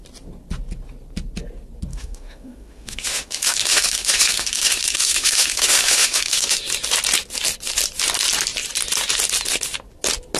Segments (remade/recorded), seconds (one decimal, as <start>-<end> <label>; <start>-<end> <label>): 0.0-1.9 recorded; 1.9-6.6 remade; 6.6-10.4 recorded